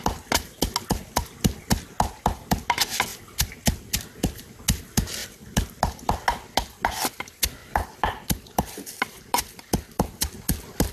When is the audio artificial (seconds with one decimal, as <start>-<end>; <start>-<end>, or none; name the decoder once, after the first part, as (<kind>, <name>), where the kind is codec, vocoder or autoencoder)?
5.2-5.7 (vocoder, BigVGAN v2); 7.6-10.2